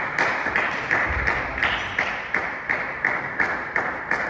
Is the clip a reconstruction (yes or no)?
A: yes